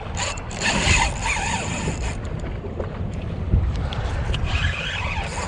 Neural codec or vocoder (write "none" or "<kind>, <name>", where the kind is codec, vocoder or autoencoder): vocoder, BigVGAN v2